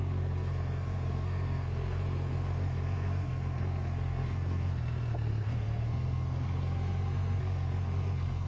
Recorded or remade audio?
remade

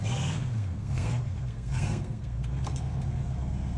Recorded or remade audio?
remade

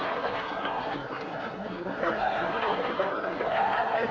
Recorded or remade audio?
remade